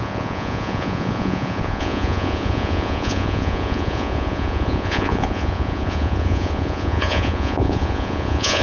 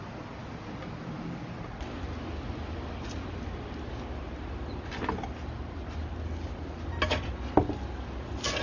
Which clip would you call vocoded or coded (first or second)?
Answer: first